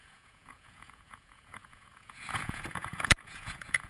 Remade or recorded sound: remade